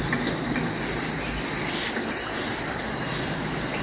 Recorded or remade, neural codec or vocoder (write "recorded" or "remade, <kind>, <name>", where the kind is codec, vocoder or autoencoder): recorded